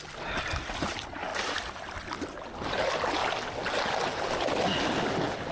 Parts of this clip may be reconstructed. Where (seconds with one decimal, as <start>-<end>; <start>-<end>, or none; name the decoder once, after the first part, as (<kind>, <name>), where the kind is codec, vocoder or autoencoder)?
none